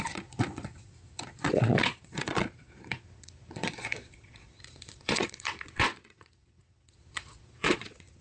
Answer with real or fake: fake